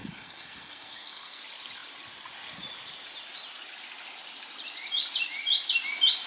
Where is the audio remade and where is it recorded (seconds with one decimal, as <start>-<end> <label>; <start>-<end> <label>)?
0.0-1.4 remade; 1.4-6.3 recorded